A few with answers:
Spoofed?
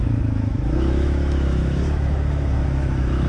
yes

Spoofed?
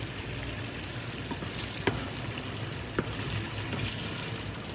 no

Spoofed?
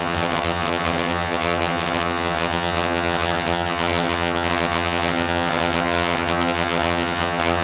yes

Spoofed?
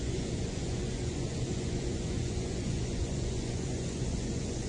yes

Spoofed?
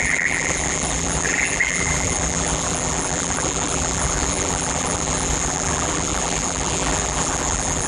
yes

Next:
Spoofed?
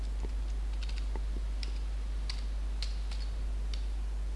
no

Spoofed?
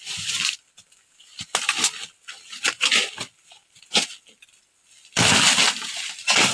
no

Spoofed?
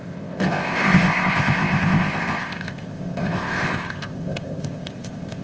yes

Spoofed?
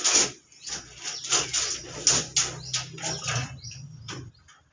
no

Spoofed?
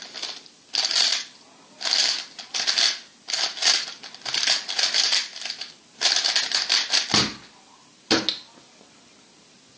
no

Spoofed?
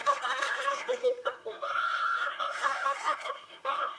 yes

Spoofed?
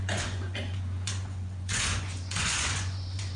yes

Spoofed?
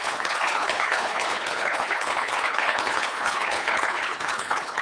yes